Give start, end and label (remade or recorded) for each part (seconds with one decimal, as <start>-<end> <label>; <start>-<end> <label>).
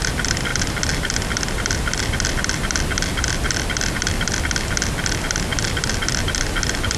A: 0.0-7.0 recorded